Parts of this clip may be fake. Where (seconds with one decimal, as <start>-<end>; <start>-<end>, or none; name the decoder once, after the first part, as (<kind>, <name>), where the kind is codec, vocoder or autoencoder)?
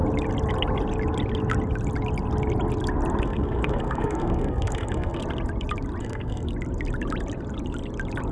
3.2-5.2 (codec, SNAC); 6.0-6.5